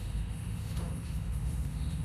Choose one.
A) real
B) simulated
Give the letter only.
B